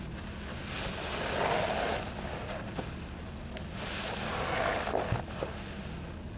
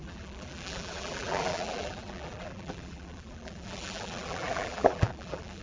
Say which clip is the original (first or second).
first